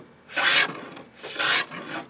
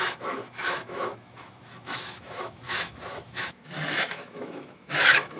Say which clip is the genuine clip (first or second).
first